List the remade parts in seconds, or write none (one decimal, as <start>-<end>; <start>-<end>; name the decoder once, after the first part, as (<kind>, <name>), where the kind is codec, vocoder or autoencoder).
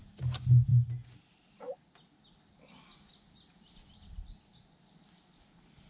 none